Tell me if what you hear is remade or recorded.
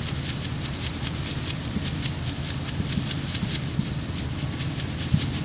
recorded